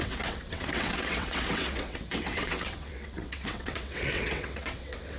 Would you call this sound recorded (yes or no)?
no